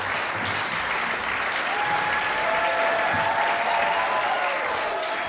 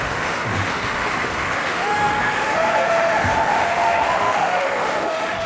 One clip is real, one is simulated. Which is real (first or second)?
first